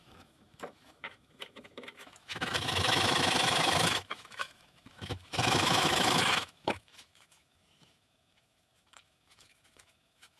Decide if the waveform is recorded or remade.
remade